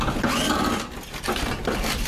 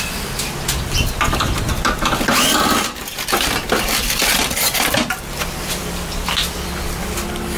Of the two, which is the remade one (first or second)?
second